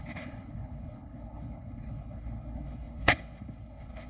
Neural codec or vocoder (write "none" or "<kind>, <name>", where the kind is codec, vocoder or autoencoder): codec, HILCodec